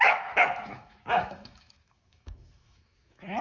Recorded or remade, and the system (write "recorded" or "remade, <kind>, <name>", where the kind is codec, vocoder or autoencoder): remade, autoencoder, DAC-VAE